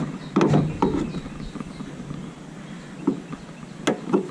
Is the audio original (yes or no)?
yes